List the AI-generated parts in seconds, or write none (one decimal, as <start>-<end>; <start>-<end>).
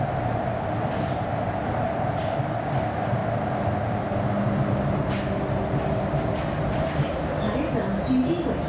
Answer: none